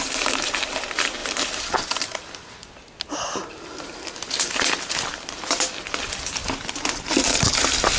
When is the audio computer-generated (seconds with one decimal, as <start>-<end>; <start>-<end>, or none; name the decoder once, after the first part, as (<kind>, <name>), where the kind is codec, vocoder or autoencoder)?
none